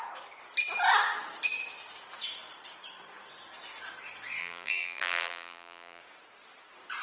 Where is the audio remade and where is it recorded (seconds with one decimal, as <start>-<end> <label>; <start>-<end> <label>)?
0.0-4.4 recorded; 4.4-6.0 remade; 6.0-7.0 recorded